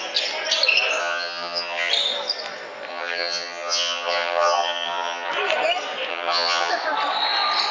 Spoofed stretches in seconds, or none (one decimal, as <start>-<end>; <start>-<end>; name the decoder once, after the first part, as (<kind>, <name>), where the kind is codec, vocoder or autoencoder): 1.0-1.9 (vocoder, HiFi-GAN); 2.9-5.3; 6.1-6.7